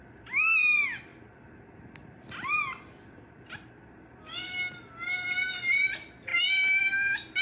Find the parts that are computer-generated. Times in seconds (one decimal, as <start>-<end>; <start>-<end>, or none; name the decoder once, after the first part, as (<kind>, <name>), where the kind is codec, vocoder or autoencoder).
none